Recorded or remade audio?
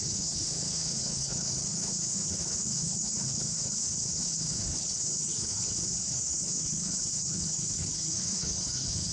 remade